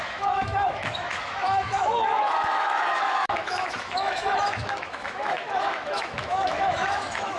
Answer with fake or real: fake